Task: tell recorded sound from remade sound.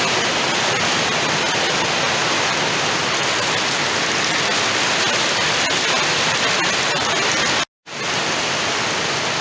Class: recorded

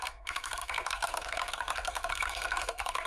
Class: remade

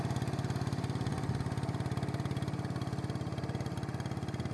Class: recorded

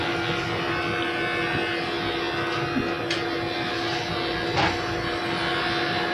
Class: recorded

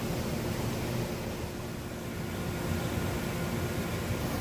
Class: recorded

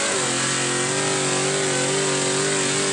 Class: recorded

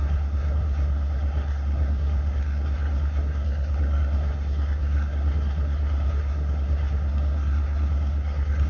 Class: remade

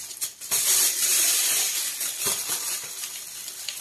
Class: recorded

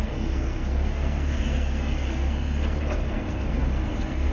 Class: remade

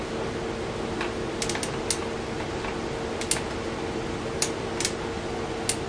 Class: recorded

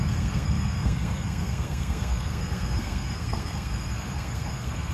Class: remade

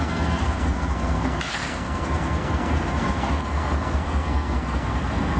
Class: remade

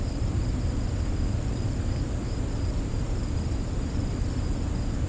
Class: recorded